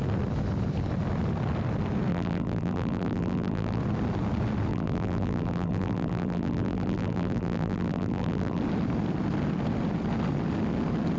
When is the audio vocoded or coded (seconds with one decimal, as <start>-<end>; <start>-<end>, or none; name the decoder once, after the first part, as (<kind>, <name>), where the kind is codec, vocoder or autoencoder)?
2.1-3.8 (vocoder, BigVGAN v2); 4.7-8.6